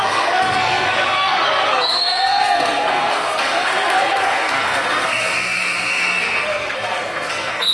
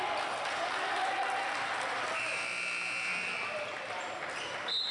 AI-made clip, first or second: first